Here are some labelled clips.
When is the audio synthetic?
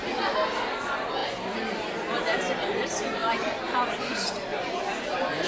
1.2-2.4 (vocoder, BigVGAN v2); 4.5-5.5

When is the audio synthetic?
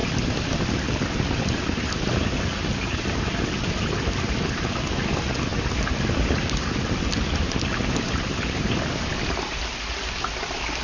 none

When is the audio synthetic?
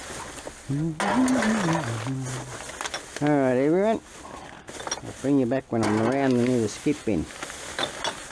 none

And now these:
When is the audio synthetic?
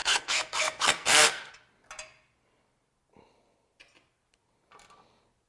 0.0-1.5 (codec, SNAC)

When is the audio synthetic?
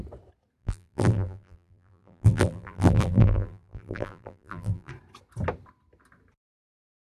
0.6-4.9 (vocoder, BigVGAN v2)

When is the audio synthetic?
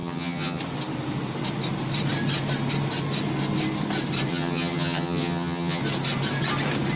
0.0-0.6 (vocoder, HiFi-GAN); 4.3-5.8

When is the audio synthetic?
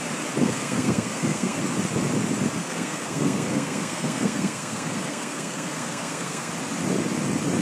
0.4-1.6 (codec, SNAC); 2.6-6.5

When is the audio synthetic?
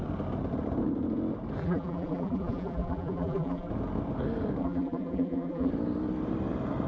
1.6-3.7 (vocoder, BigVGAN v2); 4.6-5.7